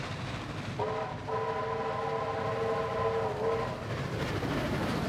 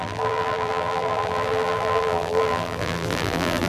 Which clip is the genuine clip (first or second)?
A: first